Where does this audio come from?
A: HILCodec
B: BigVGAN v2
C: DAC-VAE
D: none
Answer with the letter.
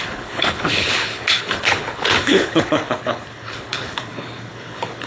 A